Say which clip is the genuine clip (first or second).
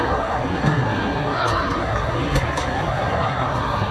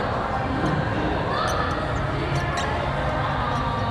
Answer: second